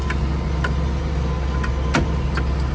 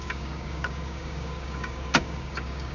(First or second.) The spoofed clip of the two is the second